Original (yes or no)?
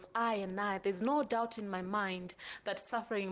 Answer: yes